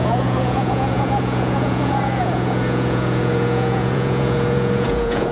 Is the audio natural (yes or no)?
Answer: no